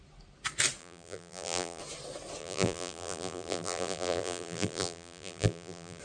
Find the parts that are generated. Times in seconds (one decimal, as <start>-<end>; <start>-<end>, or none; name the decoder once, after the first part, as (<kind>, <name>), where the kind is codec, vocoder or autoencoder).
0.8-1.8 (vocoder, BigVGAN v2); 2.4-6.0